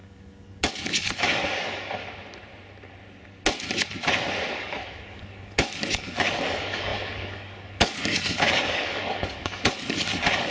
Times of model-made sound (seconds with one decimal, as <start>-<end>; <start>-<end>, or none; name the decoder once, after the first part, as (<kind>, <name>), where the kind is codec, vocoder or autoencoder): 0.0-2.0 (codec, DAC); 4.5-10.5